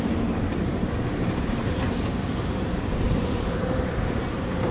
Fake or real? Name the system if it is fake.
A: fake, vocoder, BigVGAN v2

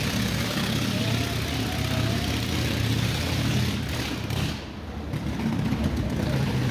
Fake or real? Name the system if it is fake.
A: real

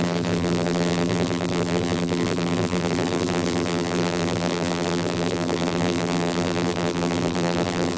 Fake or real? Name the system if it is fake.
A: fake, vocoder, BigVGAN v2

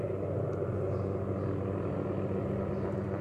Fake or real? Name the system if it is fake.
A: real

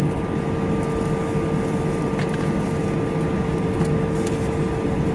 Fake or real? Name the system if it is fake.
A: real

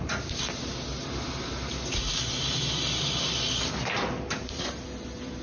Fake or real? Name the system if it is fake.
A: real